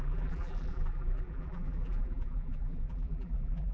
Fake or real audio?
fake